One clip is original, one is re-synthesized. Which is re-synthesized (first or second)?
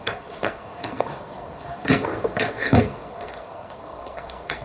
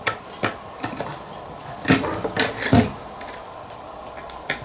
first